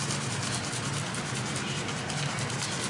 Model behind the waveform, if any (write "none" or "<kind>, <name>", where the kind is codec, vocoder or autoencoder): none